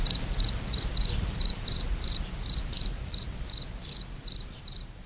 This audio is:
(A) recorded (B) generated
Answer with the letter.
B